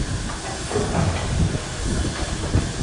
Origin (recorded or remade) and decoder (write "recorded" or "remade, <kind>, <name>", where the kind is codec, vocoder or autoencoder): recorded